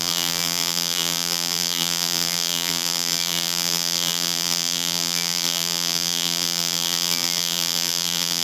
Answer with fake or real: fake